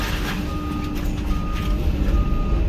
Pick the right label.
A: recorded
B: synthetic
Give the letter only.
A